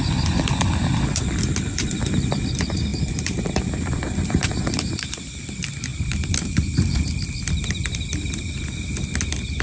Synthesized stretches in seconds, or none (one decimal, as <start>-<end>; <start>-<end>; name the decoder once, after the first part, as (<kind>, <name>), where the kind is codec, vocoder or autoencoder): 2.9-5.4 (vocoder, BigVGAN v2); 5.9-7.1